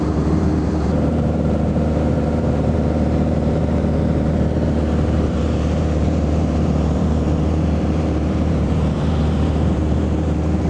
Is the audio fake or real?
fake